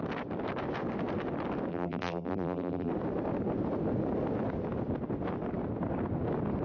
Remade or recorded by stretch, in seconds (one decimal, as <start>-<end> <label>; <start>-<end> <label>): 0.0-1.7 recorded; 1.7-2.9 remade; 2.9-6.6 recorded